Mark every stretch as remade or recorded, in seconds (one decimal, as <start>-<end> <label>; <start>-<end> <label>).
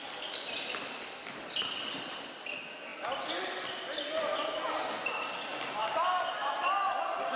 0.0-7.4 recorded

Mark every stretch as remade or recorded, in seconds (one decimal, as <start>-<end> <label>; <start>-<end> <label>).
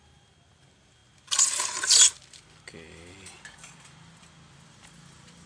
0.0-5.5 recorded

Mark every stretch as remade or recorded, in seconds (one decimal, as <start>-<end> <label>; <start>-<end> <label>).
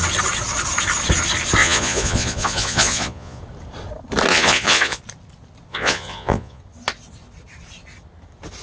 0.0-1.6 recorded; 1.6-3.4 remade; 3.4-4.3 recorded; 4.3-5.0 remade; 5.0-5.7 recorded; 5.7-6.6 remade; 6.6-8.6 recorded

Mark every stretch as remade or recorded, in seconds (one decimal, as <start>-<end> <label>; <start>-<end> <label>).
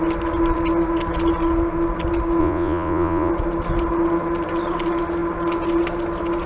0.0-2.4 recorded; 2.4-3.3 remade; 3.3-6.5 recorded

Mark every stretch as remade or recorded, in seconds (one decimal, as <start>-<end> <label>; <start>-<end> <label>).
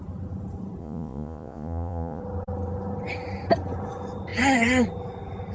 0.0-0.8 recorded; 0.8-2.2 remade; 2.2-5.5 recorded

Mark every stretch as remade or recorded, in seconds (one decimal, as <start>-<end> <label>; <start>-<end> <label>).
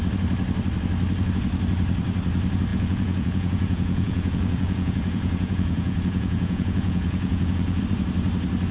0.0-2.7 recorded; 2.7-7.8 remade; 7.8-8.7 recorded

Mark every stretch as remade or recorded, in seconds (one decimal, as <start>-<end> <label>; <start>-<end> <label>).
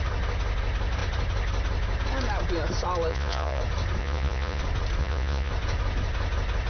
0.0-3.1 recorded; 3.1-3.6 remade; 3.6-4.0 recorded; 4.0-4.6 remade; 4.6-5.0 recorded; 5.0-5.5 remade; 5.5-6.7 recorded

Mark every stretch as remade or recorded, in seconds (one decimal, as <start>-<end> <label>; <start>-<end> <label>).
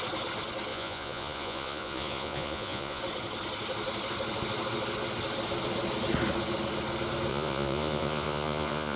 0.0-0.7 recorded; 0.7-3.0 remade; 3.0-7.3 recorded; 7.3-9.0 remade